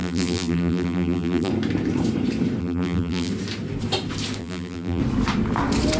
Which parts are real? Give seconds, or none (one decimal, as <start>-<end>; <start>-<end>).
1.5-2.6; 3.3-4.4; 5.0-6.0